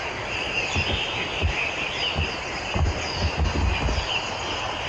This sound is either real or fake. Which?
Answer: real